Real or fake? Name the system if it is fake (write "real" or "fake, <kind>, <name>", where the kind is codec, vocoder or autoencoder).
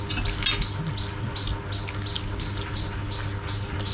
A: real